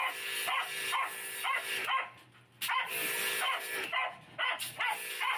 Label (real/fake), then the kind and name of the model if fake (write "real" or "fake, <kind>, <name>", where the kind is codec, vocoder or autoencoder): real